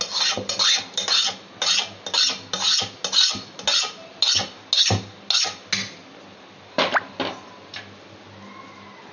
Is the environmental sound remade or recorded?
recorded